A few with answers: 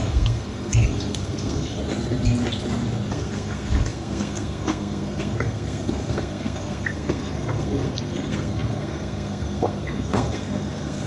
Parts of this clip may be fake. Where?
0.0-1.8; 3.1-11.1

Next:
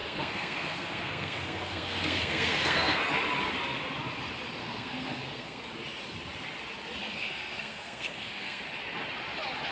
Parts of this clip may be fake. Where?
0.0-3.0; 4.6-5.6; 7.0-8.6